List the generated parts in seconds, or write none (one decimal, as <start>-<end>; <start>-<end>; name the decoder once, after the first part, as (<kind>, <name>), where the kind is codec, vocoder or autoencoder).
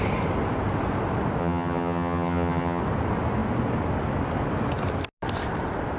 1.4-2.8 (vocoder, HiFi-GAN)